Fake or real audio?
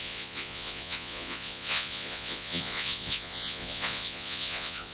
fake